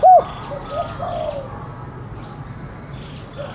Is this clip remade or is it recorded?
recorded